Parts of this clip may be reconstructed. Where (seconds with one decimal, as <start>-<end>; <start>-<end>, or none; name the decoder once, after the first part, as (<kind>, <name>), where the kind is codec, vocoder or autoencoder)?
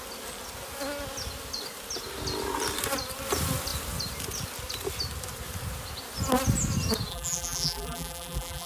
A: 7.1-8.7 (vocoder, BigVGAN v2)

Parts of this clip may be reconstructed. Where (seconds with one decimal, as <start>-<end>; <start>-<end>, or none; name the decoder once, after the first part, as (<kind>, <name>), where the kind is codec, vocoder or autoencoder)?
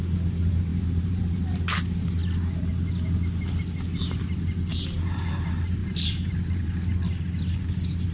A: 0.7-1.6 (vocoder, BigVGAN v2); 5.8-6.7